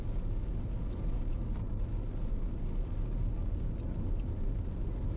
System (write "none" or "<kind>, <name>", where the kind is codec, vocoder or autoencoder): none